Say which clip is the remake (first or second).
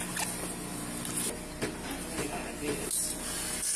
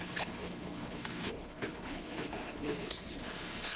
second